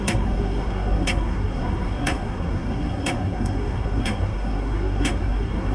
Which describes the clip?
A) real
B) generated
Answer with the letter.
B